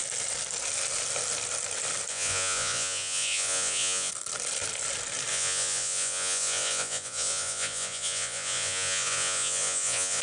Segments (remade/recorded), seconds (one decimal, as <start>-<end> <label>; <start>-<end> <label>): 0.0-2.1 recorded; 2.1-4.1 remade; 4.1-5.3 recorded; 5.3-10.2 remade